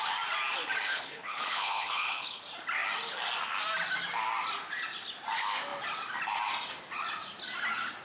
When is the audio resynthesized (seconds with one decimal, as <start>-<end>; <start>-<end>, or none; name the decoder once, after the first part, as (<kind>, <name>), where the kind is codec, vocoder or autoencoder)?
0.9-2.4 (codec, HILCodec)